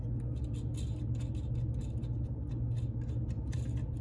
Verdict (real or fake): real